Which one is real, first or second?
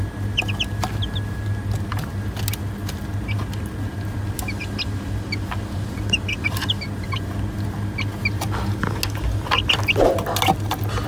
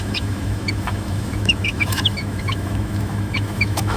first